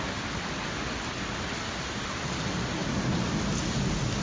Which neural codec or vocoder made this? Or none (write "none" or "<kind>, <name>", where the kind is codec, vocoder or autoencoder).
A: none